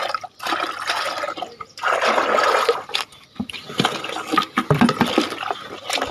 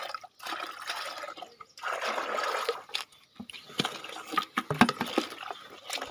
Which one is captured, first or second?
second